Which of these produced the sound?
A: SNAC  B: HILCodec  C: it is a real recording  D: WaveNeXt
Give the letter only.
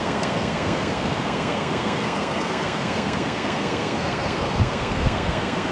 A